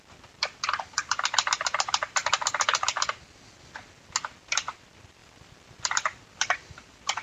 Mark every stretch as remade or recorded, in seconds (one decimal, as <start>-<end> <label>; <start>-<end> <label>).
0.0-2.2 remade; 2.2-4.4 recorded; 4.4-7.2 remade